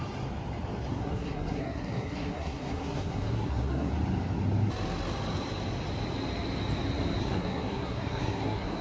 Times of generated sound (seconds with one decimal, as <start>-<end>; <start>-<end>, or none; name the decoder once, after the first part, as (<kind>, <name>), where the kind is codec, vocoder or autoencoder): 0.9-3.9 (codec, SNAC); 7.2-8.8